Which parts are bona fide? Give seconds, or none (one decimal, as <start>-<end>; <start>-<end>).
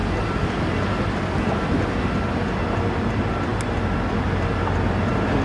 0.0-5.4